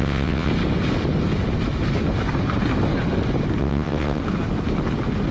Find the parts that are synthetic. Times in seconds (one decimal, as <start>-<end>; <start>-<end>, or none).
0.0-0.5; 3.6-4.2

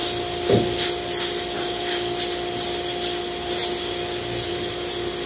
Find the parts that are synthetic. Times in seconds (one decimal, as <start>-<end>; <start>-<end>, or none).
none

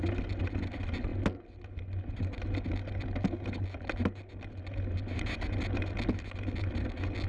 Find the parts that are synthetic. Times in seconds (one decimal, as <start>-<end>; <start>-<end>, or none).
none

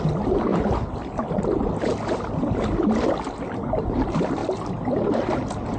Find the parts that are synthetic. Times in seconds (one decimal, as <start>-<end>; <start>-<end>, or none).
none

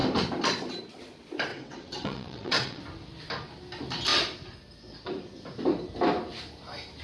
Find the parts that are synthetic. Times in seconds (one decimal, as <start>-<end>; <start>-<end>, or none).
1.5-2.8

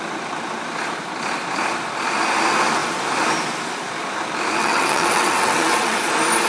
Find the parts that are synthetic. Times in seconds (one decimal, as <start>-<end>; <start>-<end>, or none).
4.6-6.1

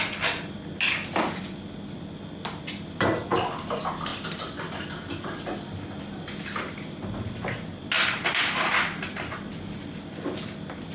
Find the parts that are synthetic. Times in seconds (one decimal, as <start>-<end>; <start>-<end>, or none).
none

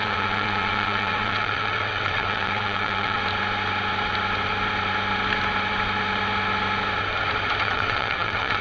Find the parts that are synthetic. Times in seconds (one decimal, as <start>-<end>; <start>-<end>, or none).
0.0-3.2; 7.6-8.6